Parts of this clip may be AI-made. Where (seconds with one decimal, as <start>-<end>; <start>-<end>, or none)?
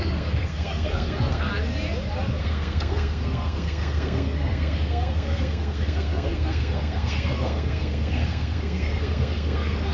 0.0-1.5; 2.4-9.9